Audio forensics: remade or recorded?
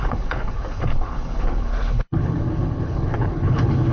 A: remade